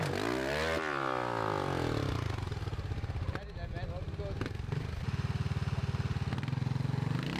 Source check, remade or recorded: recorded